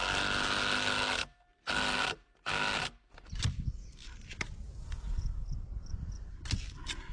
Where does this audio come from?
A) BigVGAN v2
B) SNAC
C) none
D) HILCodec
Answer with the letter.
C